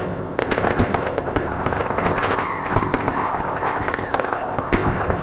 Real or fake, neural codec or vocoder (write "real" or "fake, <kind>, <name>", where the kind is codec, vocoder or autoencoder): fake, codec, ZipCodec